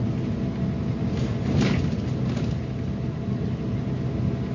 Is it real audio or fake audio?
real